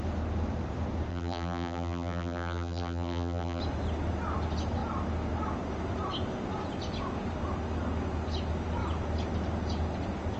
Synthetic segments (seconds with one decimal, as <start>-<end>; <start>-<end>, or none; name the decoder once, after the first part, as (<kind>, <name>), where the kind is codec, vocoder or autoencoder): 1.1-3.6 (vocoder, BigVGAN v2)